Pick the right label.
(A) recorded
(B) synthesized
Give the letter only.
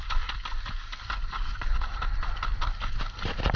B